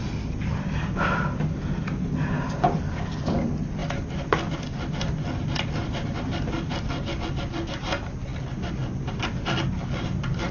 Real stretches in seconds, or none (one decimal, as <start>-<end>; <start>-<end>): 0.0-10.5